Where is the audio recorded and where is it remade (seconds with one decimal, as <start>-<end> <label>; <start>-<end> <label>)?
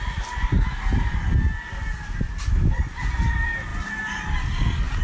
0.0-5.0 recorded